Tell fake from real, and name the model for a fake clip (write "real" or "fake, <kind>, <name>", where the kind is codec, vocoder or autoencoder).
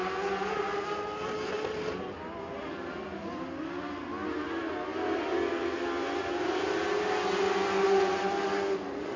real